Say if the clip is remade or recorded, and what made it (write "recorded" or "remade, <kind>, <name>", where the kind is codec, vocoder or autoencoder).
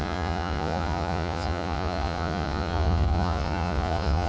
remade, vocoder, Vocos